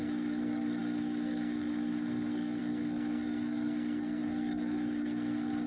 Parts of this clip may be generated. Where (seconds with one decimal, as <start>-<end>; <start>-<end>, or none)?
0.0-5.7